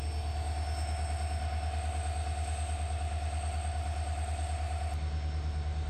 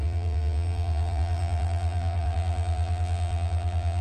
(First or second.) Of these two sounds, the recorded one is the first